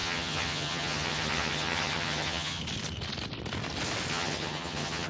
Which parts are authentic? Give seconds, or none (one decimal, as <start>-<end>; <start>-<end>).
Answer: 2.6-4.1